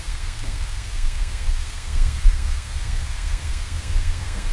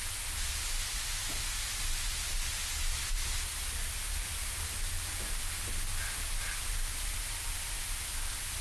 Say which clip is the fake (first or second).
first